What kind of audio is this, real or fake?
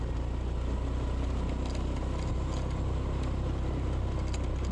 real